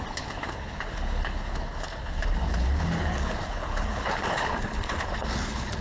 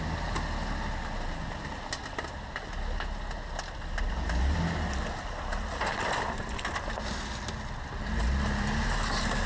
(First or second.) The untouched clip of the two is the second